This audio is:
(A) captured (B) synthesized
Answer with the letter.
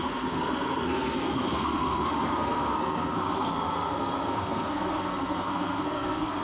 B